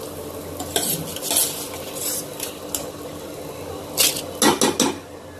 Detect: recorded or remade recorded